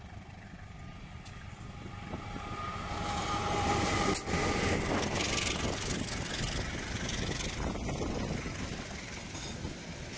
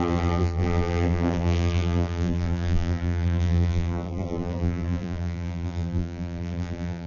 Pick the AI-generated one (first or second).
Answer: second